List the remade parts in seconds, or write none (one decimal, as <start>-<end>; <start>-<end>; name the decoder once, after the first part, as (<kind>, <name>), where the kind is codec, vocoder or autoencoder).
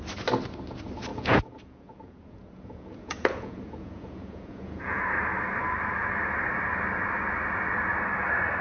1.1-5.0 (vocoder, Vocos)